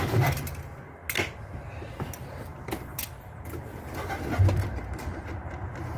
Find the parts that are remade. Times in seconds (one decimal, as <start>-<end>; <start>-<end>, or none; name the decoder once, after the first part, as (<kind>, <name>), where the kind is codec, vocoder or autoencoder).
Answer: none

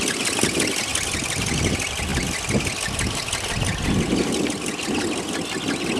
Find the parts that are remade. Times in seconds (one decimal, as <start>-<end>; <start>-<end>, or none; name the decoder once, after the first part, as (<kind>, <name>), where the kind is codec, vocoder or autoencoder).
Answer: none

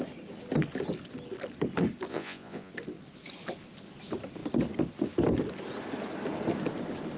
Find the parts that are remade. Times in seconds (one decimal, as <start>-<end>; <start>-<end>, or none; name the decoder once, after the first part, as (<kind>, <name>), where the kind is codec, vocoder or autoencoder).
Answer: 2.1-2.7 (vocoder, Vocos)

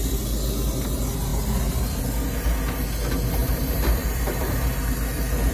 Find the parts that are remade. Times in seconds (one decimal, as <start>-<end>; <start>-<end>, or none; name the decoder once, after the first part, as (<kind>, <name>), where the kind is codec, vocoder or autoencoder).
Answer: 3.4-4.6 (vocoder, BigVGAN v2)

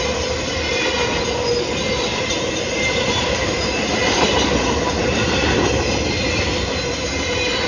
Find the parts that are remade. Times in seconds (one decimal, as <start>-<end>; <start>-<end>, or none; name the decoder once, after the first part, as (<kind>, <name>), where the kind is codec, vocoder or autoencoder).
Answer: 2.1-6.4 (vocoder, BigVGAN v2)

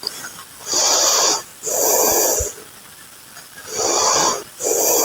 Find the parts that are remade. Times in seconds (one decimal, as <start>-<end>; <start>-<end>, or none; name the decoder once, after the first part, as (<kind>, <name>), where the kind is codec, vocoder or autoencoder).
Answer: none

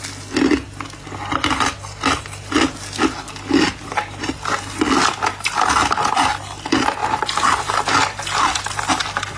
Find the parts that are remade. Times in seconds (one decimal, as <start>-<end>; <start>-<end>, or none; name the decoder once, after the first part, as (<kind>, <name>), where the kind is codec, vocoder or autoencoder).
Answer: none